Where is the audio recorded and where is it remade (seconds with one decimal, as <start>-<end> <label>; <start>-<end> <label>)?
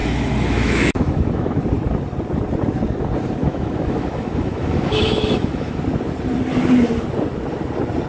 0.0-1.6 remade; 1.6-3.4 recorded; 3.4-5.8 remade; 5.8-8.1 recorded